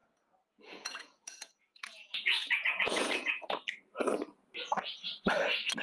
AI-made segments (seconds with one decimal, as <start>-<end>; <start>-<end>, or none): 0.0-3.5